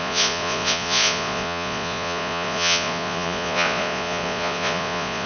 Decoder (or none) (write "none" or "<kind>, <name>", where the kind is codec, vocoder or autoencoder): vocoder, Vocos